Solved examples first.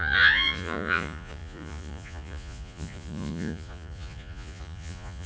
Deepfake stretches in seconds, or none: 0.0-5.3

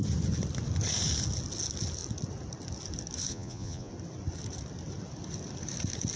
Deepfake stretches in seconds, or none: 3.3-3.9

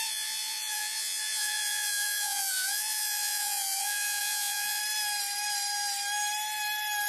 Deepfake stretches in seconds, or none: 0.0-4.8

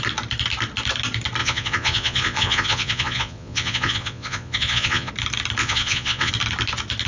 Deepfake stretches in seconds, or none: 1.4-5.1; 5.6-6.3

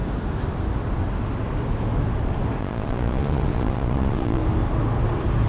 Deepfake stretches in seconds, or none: 2.6-4.4

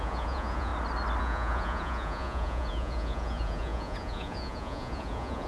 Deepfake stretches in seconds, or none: 0.0-0.7; 1.2-5.5